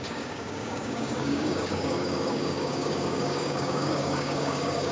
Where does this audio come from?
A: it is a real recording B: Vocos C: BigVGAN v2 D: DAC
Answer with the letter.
D